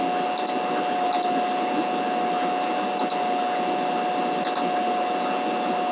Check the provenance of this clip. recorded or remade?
recorded